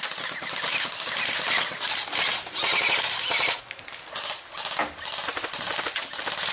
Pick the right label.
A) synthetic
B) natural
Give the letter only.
B